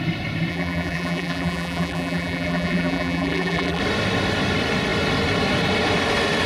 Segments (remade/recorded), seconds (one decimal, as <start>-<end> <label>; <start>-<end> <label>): 0.0-0.5 recorded; 0.5-3.8 remade; 3.8-6.5 recorded